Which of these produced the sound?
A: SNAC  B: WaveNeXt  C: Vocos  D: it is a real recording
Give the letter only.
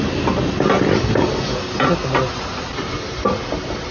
D